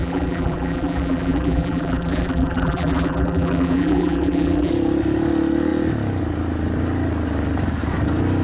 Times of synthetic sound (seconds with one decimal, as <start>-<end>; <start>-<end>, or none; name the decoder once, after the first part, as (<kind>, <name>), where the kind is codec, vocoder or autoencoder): 0.0-4.7 (vocoder, BigVGAN v2)